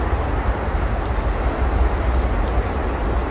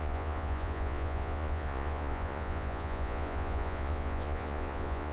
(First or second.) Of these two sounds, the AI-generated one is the second